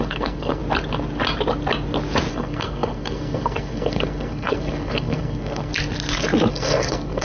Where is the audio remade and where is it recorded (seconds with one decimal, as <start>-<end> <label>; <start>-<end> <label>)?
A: 0.0-0.6 remade; 0.6-2.3 recorded; 2.3-5.7 remade; 5.7-6.5 recorded; 6.5-7.2 remade